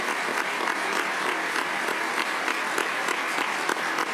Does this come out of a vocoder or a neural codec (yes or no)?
no